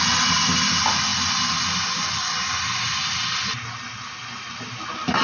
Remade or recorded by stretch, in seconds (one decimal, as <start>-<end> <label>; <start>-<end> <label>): 0.0-5.2 recorded